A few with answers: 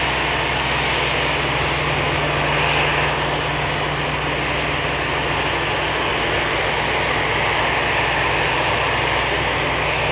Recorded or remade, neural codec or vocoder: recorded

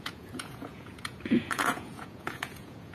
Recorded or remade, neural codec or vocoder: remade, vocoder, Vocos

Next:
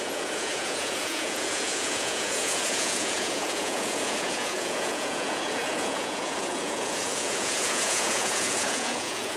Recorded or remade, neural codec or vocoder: remade, vocoder, Vocos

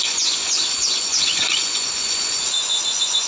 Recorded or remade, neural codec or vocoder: remade, vocoder, Vocos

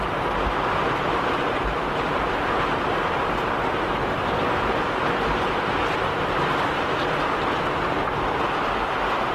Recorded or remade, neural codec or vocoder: recorded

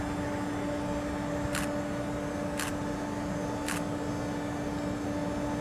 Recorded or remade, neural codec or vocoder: recorded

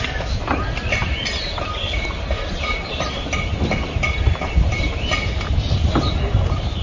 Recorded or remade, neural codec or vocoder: recorded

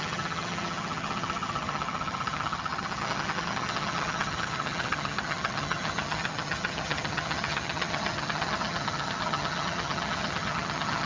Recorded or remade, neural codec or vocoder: remade, vocoder, HiFi-GAN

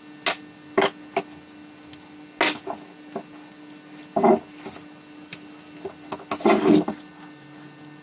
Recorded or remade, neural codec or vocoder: recorded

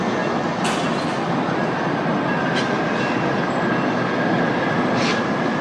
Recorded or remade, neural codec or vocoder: recorded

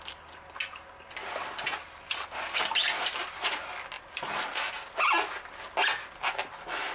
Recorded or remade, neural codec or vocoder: recorded